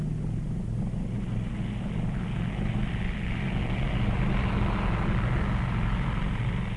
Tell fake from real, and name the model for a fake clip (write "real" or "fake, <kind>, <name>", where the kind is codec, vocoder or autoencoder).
real